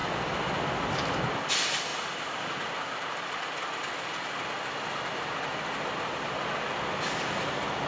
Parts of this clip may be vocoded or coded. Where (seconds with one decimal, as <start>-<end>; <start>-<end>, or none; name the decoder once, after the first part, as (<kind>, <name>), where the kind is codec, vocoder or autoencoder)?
0.0-0.6 (vocoder, BigVGAN v2)